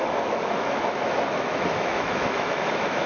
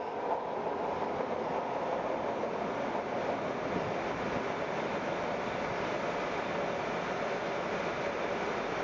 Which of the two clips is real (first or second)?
second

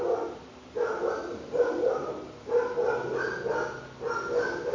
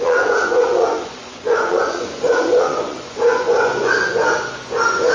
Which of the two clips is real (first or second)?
first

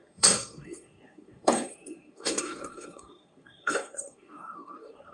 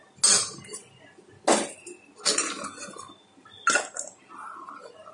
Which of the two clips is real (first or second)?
second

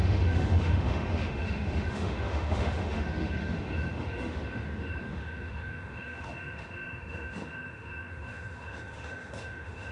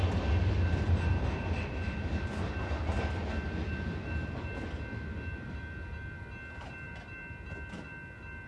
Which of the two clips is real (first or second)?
second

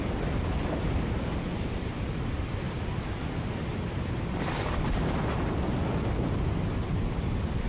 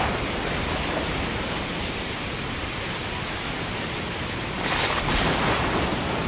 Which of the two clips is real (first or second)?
second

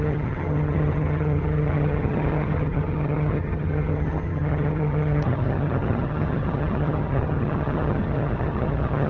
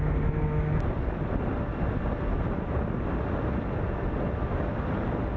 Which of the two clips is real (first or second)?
second